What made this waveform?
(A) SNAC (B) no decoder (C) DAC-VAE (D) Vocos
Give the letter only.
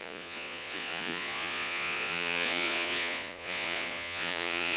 D